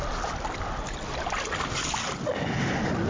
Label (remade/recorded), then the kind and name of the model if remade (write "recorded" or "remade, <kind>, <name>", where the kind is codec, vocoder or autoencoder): recorded